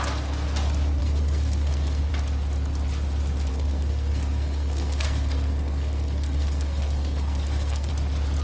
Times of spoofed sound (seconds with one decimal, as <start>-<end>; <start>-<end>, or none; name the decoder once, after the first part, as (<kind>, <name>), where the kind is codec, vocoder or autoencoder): 1.0-2.1 (codec, SNAC); 3.5-7.9